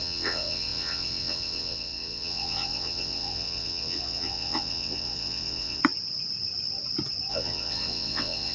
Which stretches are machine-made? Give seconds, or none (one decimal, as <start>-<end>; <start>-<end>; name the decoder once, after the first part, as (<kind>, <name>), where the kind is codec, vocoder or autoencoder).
0.0-5.8 (vocoder, WaveNeXt); 7.3-8.5